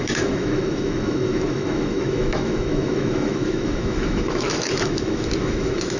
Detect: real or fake fake